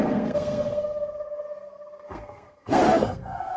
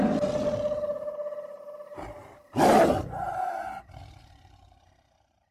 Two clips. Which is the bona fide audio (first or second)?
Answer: second